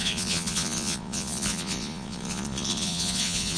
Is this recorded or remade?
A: remade